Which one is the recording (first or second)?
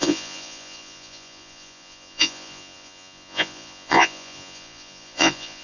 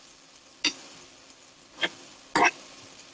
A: second